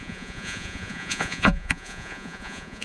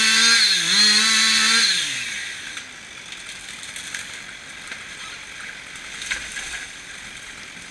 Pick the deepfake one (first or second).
first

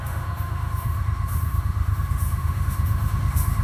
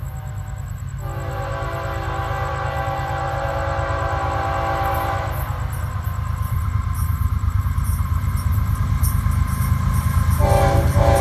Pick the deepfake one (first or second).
first